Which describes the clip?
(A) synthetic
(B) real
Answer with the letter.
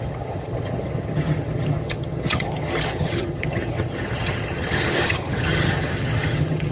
A